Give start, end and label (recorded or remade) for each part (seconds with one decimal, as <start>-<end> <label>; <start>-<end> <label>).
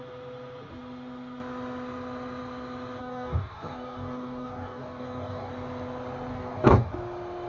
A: 0.0-3.0 recorded; 3.0-5.5 remade; 5.5-6.3 recorded; 6.3-6.9 remade; 6.9-7.5 recorded